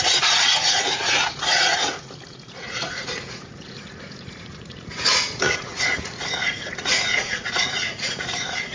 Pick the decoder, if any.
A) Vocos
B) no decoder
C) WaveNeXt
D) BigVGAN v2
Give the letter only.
A